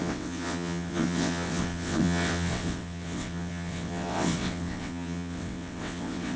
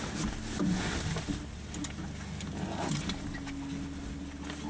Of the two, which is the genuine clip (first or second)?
second